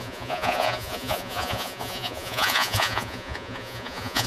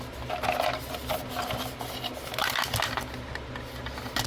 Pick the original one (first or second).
second